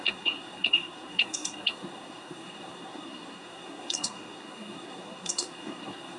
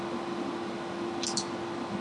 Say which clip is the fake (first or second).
first